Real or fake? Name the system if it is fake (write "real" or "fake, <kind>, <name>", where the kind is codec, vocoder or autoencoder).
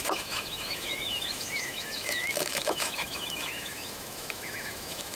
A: fake, autoencoder, DAC-VAE